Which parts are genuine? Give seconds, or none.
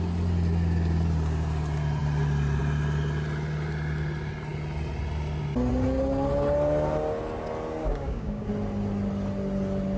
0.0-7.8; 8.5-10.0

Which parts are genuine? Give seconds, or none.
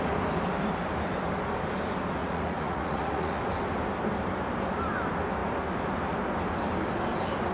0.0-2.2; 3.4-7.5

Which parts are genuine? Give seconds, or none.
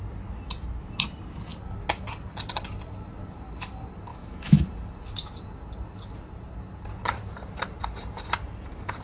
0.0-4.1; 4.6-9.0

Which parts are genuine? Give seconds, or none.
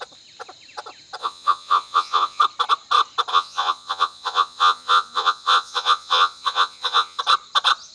0.0-1.2; 2.4-3.3; 7.2-7.9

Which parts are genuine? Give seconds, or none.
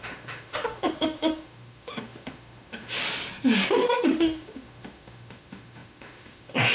3.0-3.7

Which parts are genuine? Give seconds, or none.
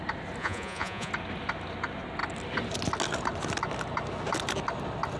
0.0-0.4; 1.1-5.2